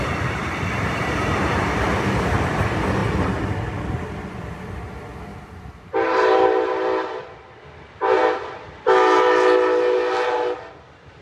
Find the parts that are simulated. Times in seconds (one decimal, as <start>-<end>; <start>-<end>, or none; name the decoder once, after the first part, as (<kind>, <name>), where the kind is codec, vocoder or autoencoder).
5.3-6.7 (vocoder, BigVGAN v2)